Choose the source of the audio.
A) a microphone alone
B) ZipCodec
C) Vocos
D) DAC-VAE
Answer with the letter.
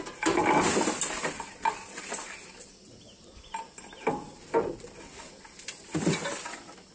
A